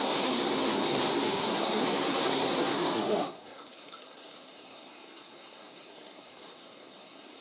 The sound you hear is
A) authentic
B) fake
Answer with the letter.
B